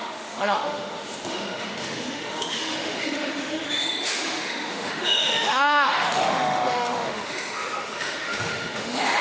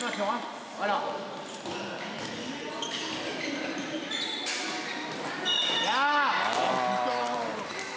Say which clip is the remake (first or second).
first